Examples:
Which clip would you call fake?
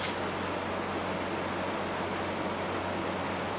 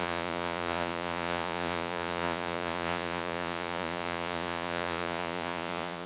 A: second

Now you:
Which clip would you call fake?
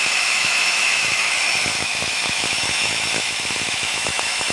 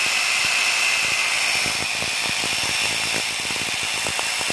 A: first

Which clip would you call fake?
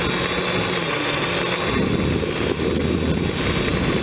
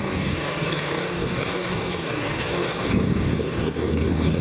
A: second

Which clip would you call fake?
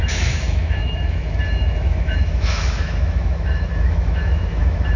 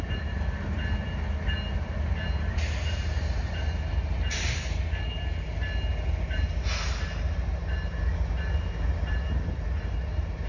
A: first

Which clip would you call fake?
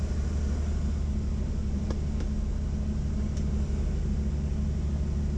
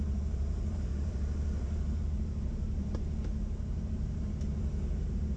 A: second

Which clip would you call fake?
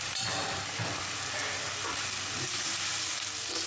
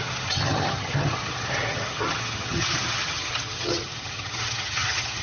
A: second